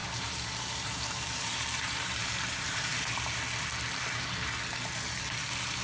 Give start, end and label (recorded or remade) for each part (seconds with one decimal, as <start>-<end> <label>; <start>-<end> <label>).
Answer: 0.0-3.0 remade; 3.0-5.8 recorded